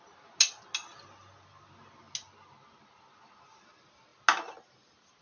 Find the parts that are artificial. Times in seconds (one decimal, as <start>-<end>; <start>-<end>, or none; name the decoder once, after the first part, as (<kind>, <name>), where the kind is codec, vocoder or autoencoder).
none